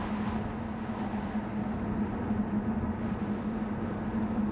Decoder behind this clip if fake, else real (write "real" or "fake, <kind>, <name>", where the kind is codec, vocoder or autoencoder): real